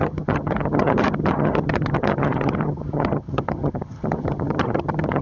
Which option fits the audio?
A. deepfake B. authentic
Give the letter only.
A